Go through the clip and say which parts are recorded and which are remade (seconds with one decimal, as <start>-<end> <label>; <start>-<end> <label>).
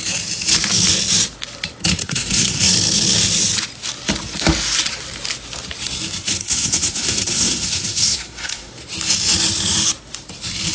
0.0-2.0 recorded; 2.0-2.6 remade; 2.6-6.3 recorded; 6.3-8.7 remade; 8.7-10.7 recorded